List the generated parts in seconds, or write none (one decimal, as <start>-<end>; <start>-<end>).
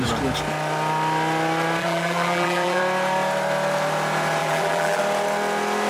1.8-2.8; 4.4-5.0